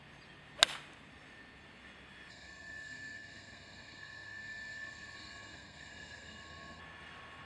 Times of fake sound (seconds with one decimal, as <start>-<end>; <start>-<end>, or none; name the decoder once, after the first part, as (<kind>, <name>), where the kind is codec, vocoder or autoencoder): 2.3-6.8 (codec, SNAC)